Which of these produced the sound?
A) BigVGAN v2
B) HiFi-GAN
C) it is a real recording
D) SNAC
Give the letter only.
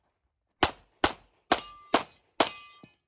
C